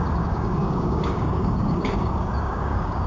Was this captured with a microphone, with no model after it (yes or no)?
no